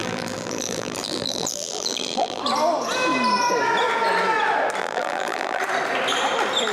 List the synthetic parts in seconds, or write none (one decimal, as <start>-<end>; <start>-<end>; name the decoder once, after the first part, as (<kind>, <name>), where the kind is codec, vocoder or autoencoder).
0.0-2.4 (vocoder, BigVGAN v2); 4.8-5.6